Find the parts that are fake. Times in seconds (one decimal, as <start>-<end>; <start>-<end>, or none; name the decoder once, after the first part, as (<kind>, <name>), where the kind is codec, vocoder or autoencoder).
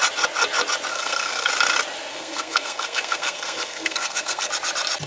0.9-1.5 (codec, SNAC); 2.1-4.5